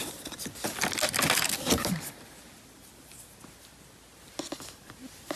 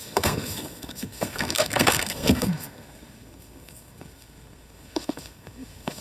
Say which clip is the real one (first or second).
first